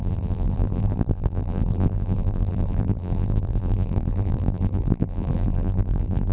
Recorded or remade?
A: remade